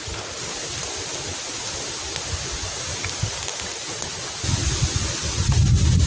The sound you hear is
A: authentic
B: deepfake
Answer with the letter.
A